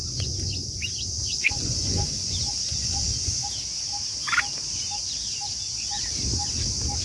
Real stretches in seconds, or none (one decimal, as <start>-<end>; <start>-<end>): 3.5-7.0